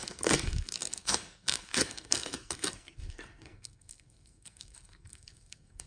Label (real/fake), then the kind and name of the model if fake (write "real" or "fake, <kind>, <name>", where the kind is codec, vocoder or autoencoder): fake, codec, SNAC